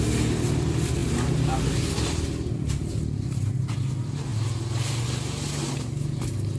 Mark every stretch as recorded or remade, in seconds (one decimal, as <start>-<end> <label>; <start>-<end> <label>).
0.0-6.6 recorded